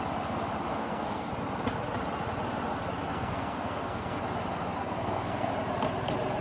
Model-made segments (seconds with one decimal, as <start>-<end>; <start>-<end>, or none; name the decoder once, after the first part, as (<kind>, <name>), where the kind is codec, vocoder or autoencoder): 0.7-1.3 (codec, SNAC); 3.1-4.2; 4.8-5.5